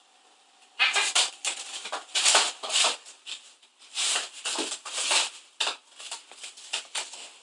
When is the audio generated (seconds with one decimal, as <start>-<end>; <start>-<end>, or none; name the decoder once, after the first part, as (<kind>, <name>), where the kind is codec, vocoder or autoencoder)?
0.0-4.4 (vocoder, BigVGAN v2)